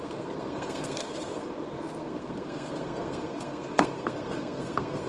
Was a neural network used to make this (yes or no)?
yes